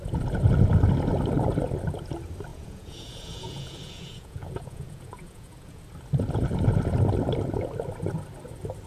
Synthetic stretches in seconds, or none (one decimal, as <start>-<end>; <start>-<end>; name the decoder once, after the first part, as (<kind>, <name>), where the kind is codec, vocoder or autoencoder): 2.5-5.8 (vocoder, Vocos)